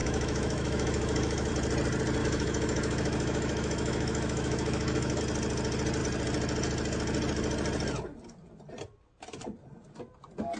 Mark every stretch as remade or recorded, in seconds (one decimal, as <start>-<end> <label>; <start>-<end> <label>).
0.0-1.5 remade; 1.5-2.2 recorded; 2.2-5.2 remade; 5.2-10.6 recorded